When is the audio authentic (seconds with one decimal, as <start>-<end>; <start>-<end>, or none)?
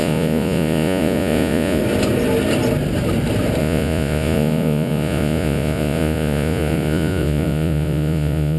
1.8-3.6